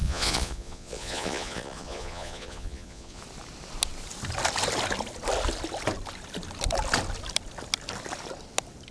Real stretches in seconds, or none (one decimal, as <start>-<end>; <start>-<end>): 3.2-8.9